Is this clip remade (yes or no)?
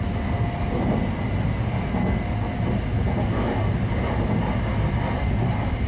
no